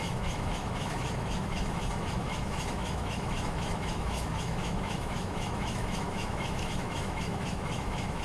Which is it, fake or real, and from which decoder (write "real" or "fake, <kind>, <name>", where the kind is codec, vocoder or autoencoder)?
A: fake, autoencoder, DAC-VAE